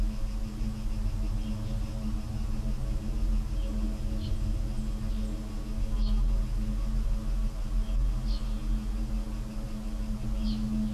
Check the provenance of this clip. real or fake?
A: real